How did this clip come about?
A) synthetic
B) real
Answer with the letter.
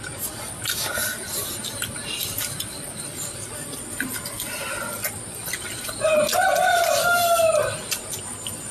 B